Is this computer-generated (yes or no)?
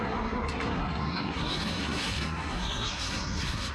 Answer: yes